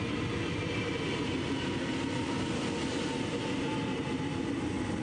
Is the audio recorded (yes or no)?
yes